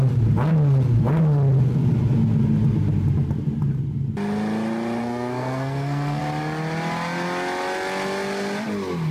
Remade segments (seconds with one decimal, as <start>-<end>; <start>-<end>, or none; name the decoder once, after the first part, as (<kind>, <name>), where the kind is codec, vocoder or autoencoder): 5.0-6.2 (codec, SNAC)